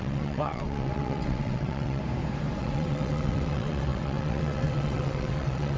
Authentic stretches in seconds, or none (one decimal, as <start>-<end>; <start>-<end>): 2.0-2.6